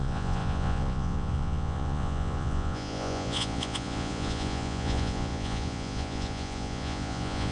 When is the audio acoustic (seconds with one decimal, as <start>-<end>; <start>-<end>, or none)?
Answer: none

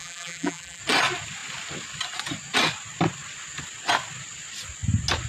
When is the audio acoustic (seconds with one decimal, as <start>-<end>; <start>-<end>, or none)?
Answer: 0.8-5.3

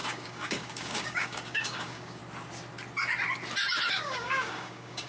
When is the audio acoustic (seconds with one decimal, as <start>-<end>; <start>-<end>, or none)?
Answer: 2.2-3.9

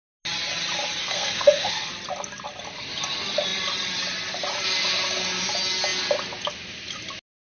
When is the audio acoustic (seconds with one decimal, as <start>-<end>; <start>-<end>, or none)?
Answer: 0.0-1.0; 1.9-7.5

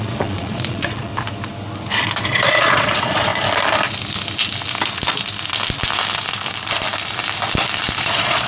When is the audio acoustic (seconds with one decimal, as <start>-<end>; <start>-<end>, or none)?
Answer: 1.1-2.3; 3.3-8.0

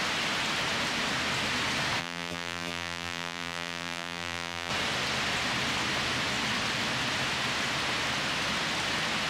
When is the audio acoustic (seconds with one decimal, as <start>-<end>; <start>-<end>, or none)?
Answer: 0.0-2.0; 4.7-9.3

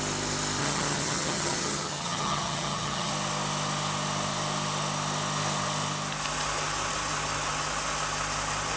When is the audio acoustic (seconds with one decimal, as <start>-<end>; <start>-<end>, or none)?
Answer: 0.0-0.6; 3.1-8.8